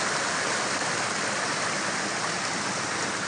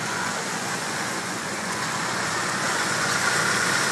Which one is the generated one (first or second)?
second